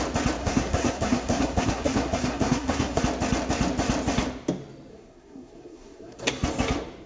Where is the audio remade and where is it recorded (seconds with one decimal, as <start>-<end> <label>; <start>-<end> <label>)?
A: 0.0-0.4 recorded; 0.4-3.0 remade; 3.0-4.9 recorded; 4.9-6.3 remade; 6.3-7.1 recorded